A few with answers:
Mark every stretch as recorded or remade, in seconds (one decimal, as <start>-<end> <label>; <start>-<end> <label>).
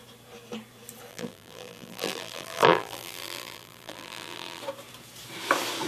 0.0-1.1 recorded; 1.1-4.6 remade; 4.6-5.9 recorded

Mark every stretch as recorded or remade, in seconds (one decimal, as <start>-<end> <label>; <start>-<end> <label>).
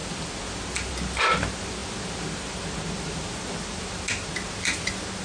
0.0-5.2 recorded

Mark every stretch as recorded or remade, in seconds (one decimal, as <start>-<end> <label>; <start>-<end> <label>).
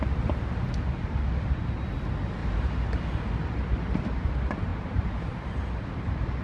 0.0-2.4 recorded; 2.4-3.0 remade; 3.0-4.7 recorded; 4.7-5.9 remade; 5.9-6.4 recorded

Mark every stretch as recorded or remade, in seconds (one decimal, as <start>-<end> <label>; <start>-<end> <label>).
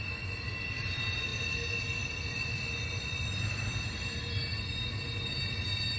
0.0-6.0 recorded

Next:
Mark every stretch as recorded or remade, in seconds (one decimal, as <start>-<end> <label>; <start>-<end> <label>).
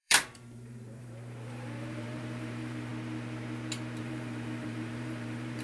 0.0-2.9 remade; 2.9-4.0 recorded; 4.0-5.6 remade